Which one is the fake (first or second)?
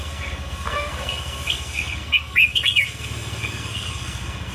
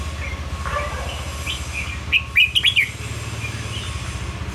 first